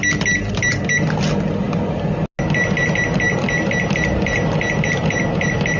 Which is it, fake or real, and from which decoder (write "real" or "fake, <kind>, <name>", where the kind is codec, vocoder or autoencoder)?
real